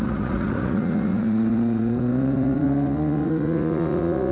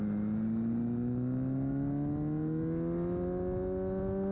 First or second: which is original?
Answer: second